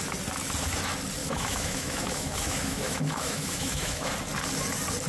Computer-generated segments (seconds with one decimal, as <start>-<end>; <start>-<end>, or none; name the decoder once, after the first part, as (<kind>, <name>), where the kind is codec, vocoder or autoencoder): 1.2-4.1 (autoencoder, DAC-VAE)

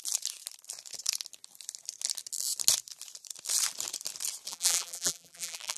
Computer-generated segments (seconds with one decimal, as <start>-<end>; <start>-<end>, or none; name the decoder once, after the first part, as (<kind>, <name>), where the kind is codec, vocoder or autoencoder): 4.5-5.8 (vocoder, BigVGAN v2)

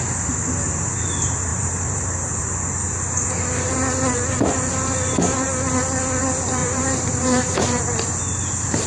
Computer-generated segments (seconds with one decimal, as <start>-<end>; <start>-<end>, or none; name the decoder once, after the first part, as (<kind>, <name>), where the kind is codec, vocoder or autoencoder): 1.5-2.0 (vocoder, BigVGAN v2); 6.6-7.8